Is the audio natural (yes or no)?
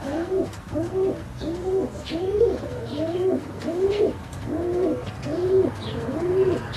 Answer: no